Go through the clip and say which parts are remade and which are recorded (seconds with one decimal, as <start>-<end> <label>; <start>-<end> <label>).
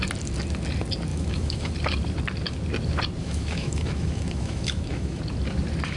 0.0-1.1 recorded; 1.1-1.7 remade; 1.7-3.2 recorded; 3.2-5.2 remade; 5.2-6.0 recorded